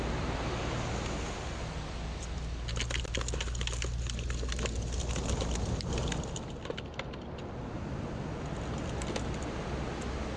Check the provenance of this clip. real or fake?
real